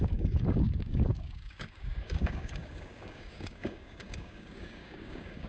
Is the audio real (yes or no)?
no